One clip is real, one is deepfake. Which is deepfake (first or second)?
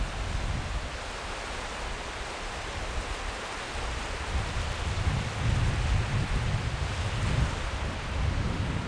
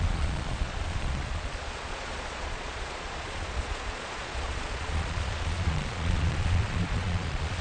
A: second